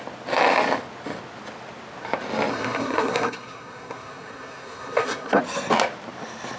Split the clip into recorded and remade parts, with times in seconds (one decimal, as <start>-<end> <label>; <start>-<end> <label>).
0.0-2.5 recorded; 2.5-5.4 remade; 5.4-6.6 recorded